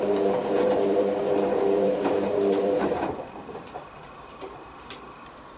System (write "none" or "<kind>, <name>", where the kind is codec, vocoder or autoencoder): vocoder, BigVGAN v2